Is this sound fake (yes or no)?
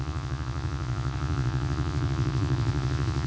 yes